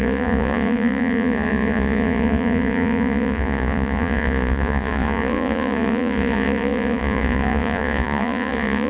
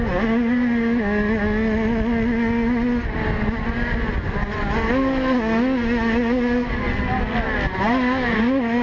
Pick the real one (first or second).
second